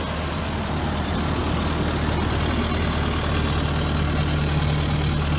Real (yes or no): yes